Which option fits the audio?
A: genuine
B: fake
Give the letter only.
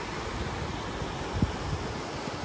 A